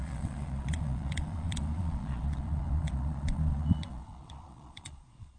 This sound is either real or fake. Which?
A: fake